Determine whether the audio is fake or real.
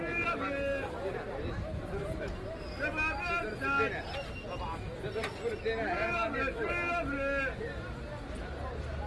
real